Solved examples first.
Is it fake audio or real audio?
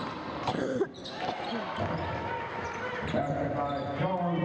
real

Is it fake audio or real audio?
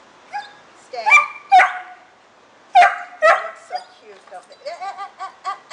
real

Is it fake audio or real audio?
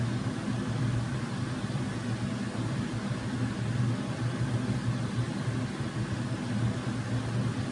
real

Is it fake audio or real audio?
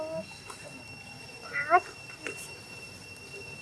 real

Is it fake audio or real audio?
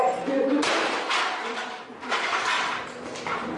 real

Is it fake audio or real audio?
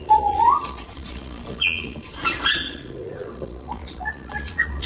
fake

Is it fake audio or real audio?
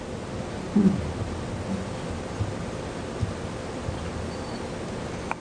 real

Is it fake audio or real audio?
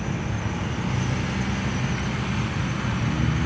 real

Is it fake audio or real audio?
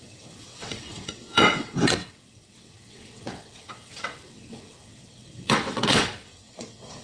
fake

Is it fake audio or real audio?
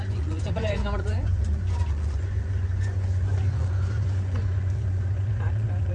fake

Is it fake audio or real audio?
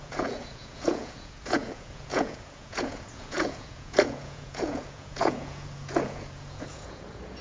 fake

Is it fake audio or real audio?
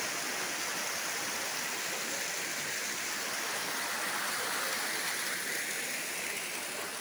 real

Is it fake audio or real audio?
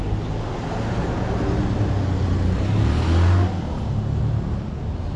real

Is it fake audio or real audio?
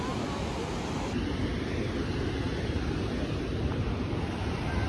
real